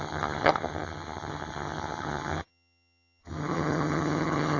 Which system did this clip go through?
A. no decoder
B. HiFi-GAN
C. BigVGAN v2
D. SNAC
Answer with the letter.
B